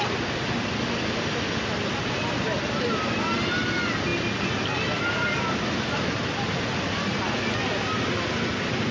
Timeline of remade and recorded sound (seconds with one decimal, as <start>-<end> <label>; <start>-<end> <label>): 0.0-8.9 recorded

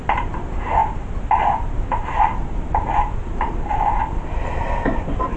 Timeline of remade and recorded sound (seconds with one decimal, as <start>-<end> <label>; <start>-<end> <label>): 0.0-5.4 recorded

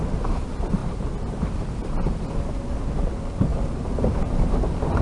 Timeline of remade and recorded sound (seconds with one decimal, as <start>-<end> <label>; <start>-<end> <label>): 0.0-3.5 recorded; 3.5-4.6 remade; 4.6-5.0 recorded

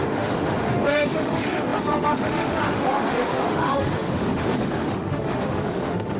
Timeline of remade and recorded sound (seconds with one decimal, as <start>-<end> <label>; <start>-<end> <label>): 0.0-6.2 remade

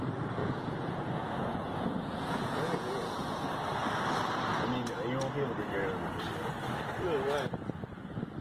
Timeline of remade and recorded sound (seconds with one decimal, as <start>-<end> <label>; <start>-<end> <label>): 0.0-0.4 recorded; 0.4-3.5 remade; 3.5-8.4 recorded

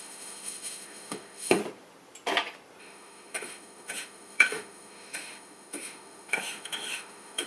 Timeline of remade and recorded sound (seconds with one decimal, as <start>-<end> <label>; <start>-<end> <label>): 0.0-1.6 remade; 1.6-2.8 recorded; 2.8-7.5 remade

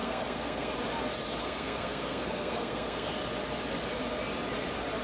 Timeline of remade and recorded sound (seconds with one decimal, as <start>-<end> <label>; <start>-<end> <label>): 0.0-0.7 remade; 0.7-1.4 recorded; 1.4-3.1 remade; 3.1-5.0 recorded